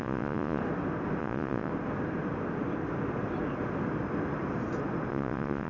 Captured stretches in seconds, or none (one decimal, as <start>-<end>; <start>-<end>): 0.6-1.2; 1.7-5.1